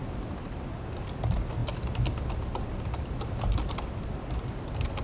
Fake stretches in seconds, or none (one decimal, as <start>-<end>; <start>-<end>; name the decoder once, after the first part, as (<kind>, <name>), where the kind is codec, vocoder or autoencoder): none

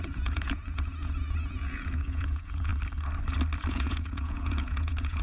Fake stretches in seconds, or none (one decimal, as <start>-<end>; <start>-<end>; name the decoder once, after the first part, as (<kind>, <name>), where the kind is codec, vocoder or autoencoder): 0.0-2.7 (vocoder, Vocos); 3.7-5.2

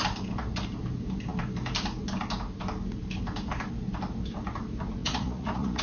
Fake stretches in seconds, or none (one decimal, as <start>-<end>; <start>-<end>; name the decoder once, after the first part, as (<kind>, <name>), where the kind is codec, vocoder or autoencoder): 5.0-5.8 (vocoder, Vocos)

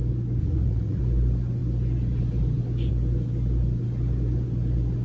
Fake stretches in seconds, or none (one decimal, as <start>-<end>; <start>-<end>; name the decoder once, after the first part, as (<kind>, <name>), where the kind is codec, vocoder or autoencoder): 0.4-1.0 (vocoder, Vocos)

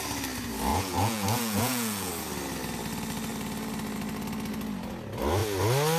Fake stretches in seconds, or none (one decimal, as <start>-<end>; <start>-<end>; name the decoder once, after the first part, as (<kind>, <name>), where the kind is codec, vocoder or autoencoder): 0.7-2.1 (vocoder, Vocos)

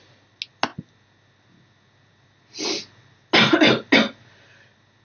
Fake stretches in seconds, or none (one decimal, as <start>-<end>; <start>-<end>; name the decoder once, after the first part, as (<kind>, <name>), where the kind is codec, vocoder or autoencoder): none

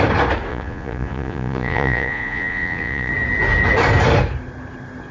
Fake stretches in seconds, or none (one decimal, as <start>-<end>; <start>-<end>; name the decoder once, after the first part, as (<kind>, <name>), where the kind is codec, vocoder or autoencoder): 0.5-3.1 (vocoder, Vocos)

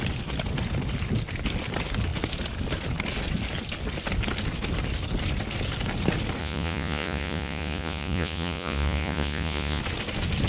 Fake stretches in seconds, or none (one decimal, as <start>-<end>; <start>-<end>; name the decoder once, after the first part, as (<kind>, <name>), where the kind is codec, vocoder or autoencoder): 6.4-9.8 (vocoder, Vocos)